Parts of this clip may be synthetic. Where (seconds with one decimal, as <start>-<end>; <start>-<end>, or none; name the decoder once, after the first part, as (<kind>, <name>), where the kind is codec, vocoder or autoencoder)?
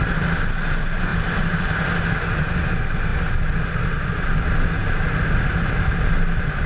none